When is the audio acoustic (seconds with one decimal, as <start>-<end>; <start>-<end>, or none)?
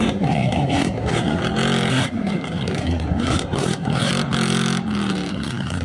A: 1.4-1.9; 4.1-5.3